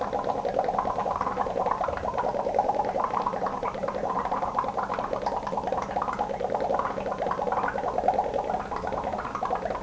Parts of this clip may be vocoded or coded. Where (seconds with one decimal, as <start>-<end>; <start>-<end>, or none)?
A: 1.0-5.9